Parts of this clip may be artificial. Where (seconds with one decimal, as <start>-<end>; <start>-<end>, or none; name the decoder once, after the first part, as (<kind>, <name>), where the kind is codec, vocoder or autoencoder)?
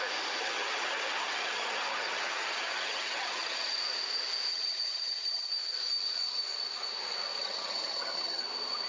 0.4-3.8 (vocoder, HiFi-GAN); 4.5-5.5; 7.4-8.4